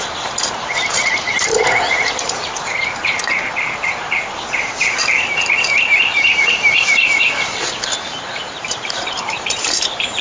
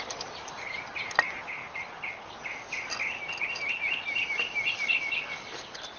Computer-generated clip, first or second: first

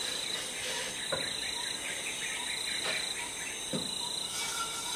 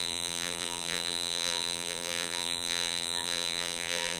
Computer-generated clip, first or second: second